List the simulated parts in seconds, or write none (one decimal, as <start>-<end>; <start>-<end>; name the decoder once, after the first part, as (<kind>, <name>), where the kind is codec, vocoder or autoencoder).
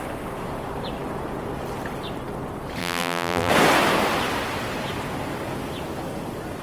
2.8-3.5 (vocoder, BigVGAN v2)